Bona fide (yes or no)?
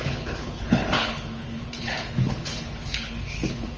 no